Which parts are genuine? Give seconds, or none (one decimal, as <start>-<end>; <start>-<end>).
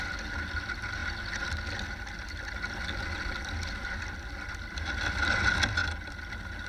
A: 0.0-6.7